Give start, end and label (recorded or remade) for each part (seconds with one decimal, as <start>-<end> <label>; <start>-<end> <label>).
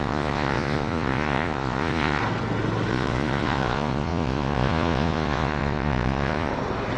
0.0-2.2 remade; 2.2-2.9 recorded; 2.9-6.5 remade; 6.5-7.0 recorded